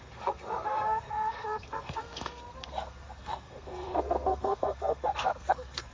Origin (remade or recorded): remade